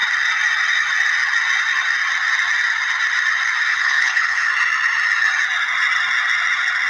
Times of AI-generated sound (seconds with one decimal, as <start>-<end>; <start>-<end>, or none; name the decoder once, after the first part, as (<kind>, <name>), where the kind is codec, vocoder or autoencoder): 3.7-4.5 (codec, HILCodec)